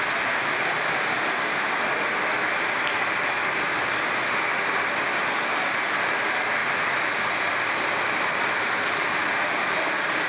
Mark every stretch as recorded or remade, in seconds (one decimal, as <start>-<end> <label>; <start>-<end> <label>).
0.0-10.3 recorded